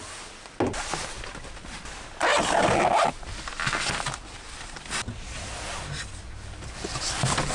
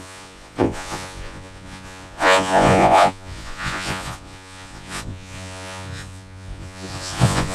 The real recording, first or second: first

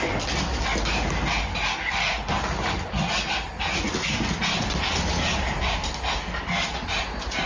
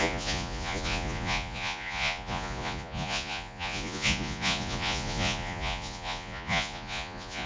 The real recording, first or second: first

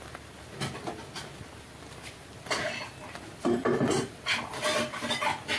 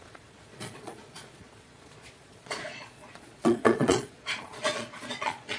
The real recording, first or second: first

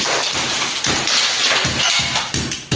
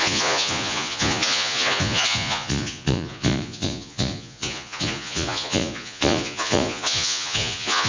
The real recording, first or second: first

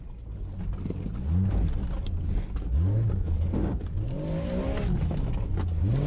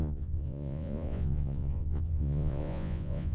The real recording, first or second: first